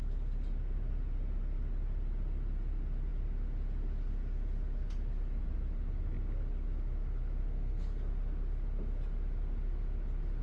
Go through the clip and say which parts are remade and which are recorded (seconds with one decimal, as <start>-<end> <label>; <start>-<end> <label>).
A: 0.0-7.4 recorded; 7.4-8.1 remade; 8.1-10.4 recorded